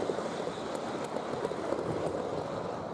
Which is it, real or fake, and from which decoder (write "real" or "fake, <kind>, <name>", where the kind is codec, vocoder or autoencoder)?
real